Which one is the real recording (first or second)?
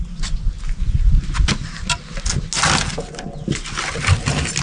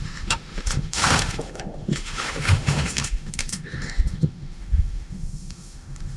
first